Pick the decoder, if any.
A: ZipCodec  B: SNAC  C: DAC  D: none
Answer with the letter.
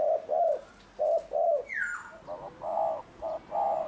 D